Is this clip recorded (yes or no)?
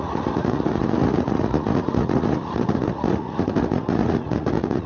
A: no